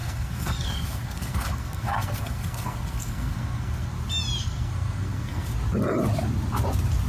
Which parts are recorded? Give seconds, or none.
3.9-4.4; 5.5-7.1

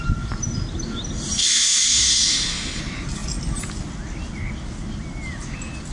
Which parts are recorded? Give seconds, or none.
0.0-1.4; 2.8-5.9

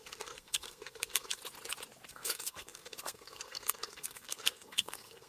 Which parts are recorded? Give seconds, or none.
1.4-2.1

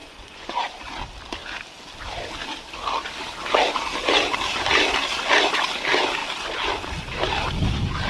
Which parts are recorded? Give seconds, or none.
0.8-8.1

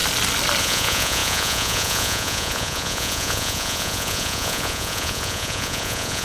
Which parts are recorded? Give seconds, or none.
0.0-0.6